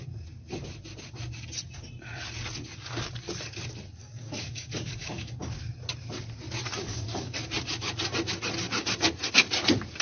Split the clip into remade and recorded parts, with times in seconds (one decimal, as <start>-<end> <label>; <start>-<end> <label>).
0.0-4.0 recorded; 4.0-5.3 remade; 5.3-6.8 recorded; 6.8-7.4 remade; 7.4-10.0 recorded